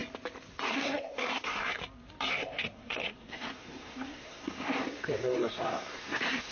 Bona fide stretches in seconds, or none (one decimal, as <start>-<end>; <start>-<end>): 0.0-0.7; 1.8-2.3